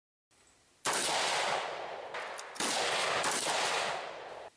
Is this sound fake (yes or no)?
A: no